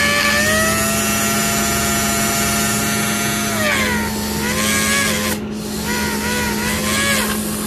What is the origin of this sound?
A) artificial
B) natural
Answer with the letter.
B